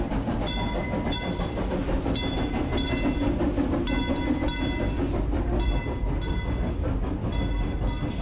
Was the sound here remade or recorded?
recorded